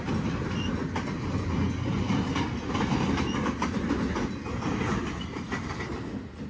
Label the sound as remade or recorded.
recorded